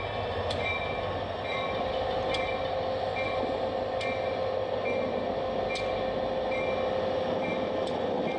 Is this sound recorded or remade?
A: recorded